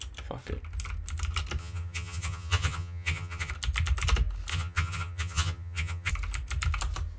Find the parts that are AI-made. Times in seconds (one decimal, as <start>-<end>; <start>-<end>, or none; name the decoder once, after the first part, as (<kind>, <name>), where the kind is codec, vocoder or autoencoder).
1.6-3.5 (vocoder, HiFi-GAN); 4.5-6.1